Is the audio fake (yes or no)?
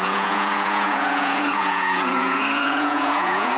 yes